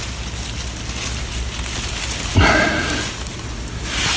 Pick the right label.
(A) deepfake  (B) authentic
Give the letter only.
B